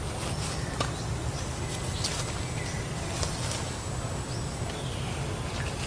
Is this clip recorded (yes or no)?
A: yes